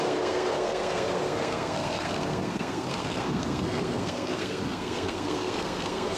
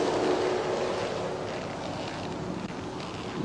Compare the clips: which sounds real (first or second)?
second